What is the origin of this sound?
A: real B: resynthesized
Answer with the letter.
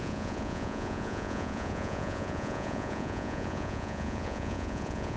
B